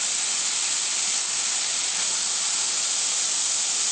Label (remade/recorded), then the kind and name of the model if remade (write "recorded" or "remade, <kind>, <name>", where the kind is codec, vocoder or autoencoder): recorded